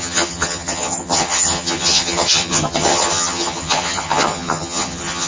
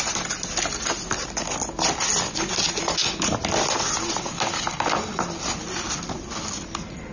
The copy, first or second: first